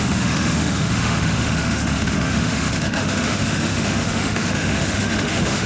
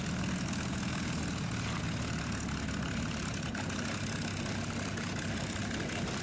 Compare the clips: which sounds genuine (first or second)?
second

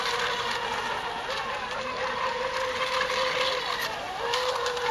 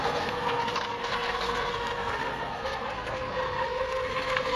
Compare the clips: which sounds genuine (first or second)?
first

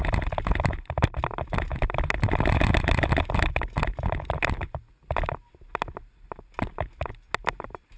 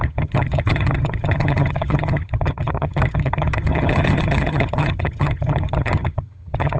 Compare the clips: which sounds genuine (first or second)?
first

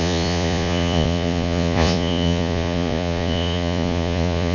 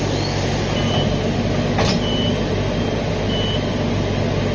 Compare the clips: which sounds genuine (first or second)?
second